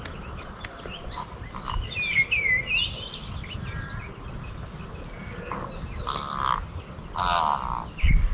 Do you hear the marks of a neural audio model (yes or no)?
no